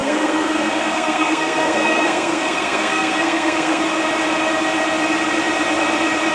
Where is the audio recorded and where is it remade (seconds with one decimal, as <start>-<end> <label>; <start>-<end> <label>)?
0.0-3.8 remade; 3.8-6.3 recorded